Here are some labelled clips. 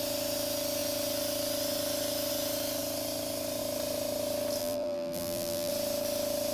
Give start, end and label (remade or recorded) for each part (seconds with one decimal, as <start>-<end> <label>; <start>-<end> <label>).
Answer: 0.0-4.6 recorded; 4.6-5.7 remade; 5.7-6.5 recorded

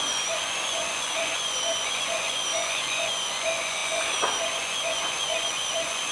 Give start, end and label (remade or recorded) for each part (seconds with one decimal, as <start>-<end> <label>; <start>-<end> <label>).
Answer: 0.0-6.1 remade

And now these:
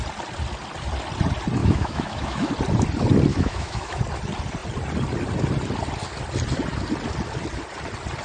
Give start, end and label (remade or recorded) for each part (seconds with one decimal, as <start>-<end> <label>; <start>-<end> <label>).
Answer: 0.0-1.6 recorded; 1.6-2.5 remade; 2.5-3.3 recorded; 3.3-4.0 remade; 4.0-8.2 recorded

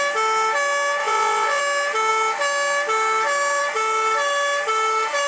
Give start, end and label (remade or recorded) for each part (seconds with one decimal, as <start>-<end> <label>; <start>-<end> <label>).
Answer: 0.0-1.0 recorded; 1.0-1.6 remade; 1.6-5.3 recorded

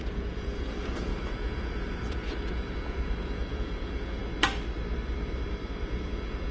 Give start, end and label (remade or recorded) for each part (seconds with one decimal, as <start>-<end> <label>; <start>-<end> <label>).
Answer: 0.0-4.2 remade; 4.2-5.8 recorded; 5.8-6.5 remade

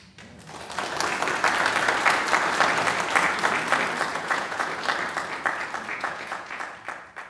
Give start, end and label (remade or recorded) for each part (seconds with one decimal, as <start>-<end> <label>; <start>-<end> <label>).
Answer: 0.0-4.1 recorded; 4.1-4.7 remade; 4.7-5.9 recorded; 5.9-6.6 remade; 6.6-7.3 recorded